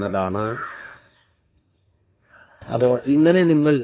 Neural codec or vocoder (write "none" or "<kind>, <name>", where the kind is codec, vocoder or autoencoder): codec, SNAC